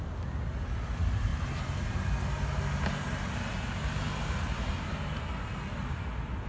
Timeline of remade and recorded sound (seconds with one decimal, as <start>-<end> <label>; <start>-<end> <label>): 0.0-6.5 recorded